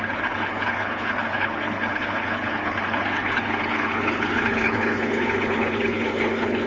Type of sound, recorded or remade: remade